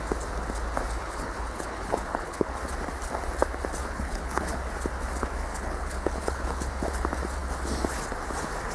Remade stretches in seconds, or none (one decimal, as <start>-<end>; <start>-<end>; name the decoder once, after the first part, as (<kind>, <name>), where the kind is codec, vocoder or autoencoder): 1.0-2.6 (codec, HILCodec); 3.8-4.6; 5.5-6.7